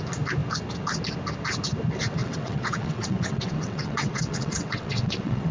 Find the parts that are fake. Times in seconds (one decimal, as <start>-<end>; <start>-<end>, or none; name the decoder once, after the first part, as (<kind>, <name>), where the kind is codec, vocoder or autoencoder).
2.2-5.5 (vocoder, WaveNeXt)